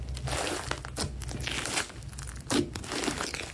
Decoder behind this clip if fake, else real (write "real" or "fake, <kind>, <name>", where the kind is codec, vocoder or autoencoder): real